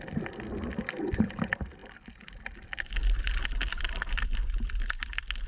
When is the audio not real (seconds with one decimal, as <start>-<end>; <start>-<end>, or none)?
none